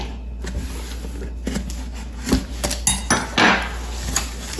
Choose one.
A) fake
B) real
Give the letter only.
B